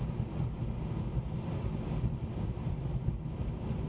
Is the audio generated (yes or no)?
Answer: no